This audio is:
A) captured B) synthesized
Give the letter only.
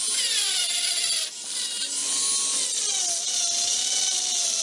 A